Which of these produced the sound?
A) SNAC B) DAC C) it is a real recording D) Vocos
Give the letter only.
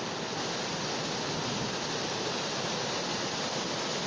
C